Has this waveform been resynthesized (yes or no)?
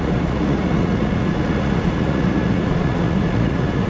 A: yes